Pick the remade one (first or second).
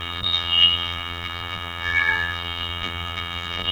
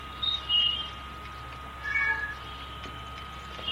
first